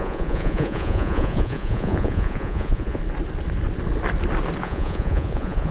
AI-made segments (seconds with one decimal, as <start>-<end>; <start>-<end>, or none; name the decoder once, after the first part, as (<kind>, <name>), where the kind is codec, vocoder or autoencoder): 0.0-3.0 (vocoder, Vocos); 4.6-5.7